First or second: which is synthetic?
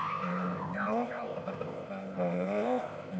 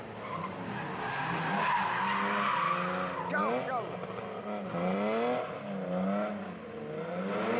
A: first